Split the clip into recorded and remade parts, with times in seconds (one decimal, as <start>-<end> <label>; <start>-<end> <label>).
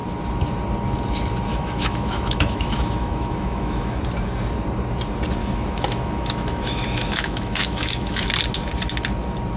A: 0.0-1.5 recorded; 1.5-4.0 remade; 4.0-5.4 recorded; 5.4-8.3 remade; 8.3-9.6 recorded